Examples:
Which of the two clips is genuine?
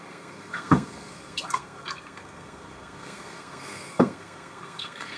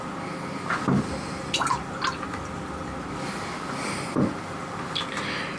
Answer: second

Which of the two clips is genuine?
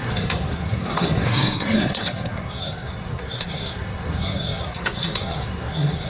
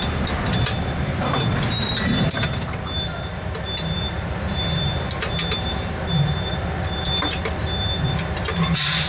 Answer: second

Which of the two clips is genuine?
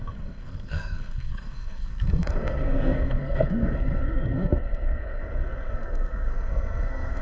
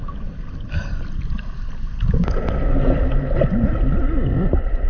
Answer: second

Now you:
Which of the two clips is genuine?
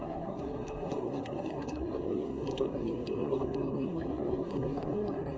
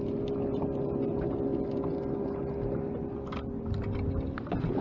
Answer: second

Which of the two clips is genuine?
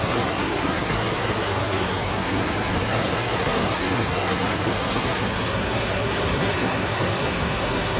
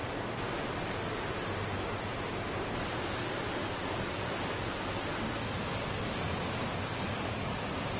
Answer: second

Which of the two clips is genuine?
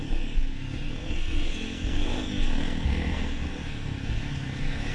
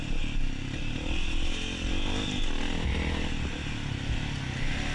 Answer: second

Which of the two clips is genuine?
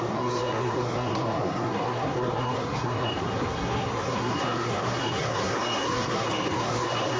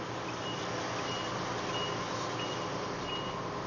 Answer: second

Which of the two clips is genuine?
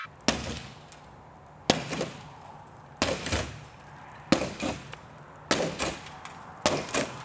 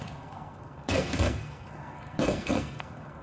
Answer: first